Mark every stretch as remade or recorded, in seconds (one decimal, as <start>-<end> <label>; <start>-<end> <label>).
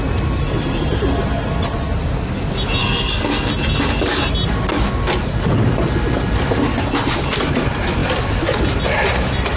0.0-2.8 recorded; 2.8-3.5 remade; 3.5-9.6 recorded